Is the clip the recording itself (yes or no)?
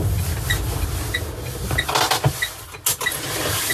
yes